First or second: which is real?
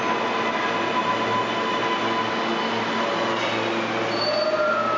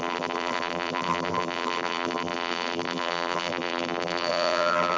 first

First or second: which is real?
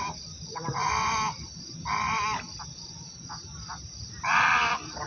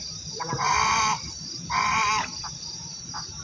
first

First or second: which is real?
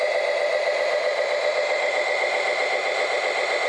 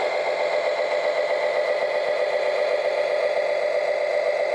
second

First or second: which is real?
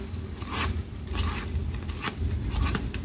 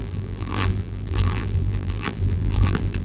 first